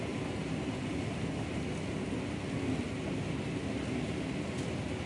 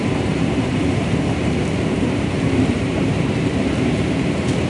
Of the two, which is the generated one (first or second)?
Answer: second